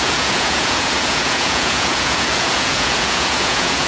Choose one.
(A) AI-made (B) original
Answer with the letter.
A